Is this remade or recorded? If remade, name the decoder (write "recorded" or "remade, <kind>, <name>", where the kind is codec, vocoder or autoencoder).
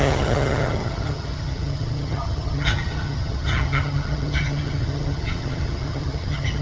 remade, vocoder, HiFi-GAN